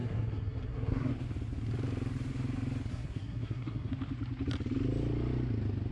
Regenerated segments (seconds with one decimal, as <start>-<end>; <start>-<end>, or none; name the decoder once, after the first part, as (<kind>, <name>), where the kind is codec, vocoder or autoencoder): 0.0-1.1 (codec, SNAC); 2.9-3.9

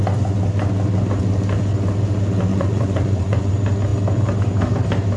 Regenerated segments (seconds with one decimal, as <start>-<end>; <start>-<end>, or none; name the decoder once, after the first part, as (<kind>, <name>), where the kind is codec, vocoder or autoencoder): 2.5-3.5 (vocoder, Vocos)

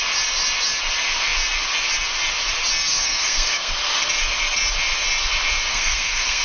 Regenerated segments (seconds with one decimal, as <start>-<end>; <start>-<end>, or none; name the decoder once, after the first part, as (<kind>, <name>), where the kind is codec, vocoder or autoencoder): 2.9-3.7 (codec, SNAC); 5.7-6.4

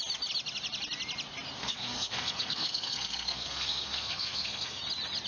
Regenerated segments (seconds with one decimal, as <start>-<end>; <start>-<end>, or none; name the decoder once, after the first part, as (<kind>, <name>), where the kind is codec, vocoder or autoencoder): 1.6-4.8 (codec, SNAC)